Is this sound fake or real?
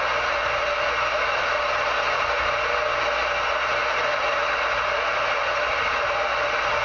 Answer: real